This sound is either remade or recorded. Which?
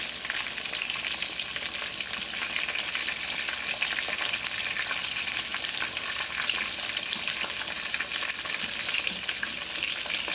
recorded